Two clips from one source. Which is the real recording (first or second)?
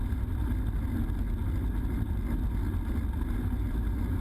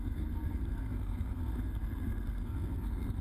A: first